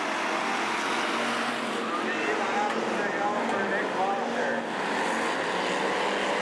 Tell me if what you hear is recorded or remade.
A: recorded